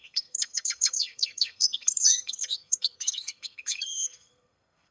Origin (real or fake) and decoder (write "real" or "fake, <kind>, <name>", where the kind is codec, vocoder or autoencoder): fake, codec, SNAC